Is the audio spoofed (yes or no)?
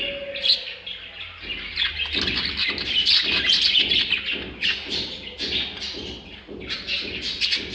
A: no